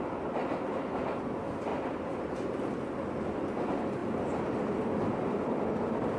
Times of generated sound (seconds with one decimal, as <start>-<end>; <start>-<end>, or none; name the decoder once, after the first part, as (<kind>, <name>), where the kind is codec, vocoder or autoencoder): none